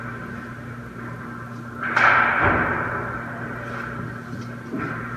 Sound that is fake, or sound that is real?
real